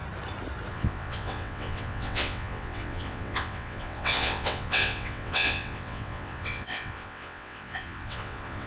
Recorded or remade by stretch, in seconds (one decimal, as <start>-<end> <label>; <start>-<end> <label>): 0.0-0.7 recorded; 0.7-8.7 remade